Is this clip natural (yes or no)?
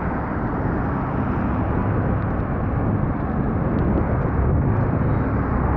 yes